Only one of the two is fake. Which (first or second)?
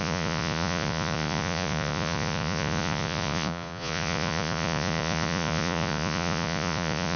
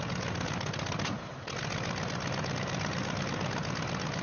first